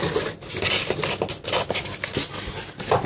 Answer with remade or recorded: recorded